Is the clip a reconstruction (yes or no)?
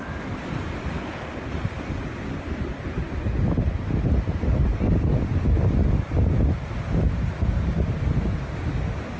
no